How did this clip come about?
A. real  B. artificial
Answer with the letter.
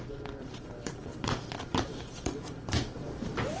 B